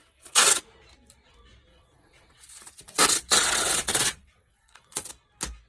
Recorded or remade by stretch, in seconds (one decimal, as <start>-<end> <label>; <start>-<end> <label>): 0.0-0.6 remade; 0.6-1.7 recorded; 1.7-5.1 remade; 5.1-5.7 recorded